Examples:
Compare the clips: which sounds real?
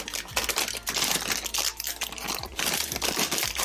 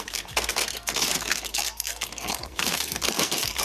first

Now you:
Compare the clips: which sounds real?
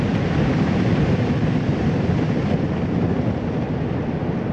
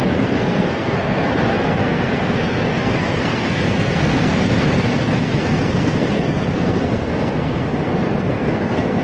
first